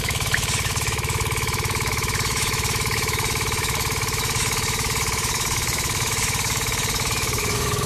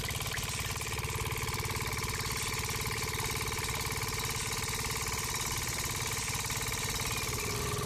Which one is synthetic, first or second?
first